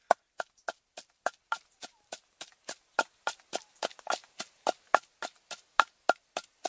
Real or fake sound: real